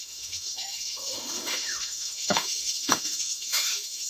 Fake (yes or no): yes